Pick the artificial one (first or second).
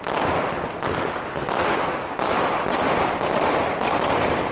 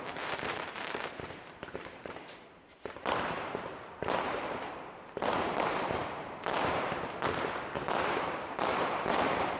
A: second